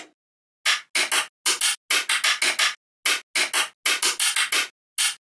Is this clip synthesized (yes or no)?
no